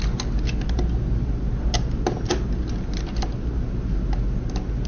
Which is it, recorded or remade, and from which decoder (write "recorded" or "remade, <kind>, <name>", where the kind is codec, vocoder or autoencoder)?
recorded